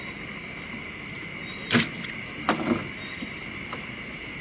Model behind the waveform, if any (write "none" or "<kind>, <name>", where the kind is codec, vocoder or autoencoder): none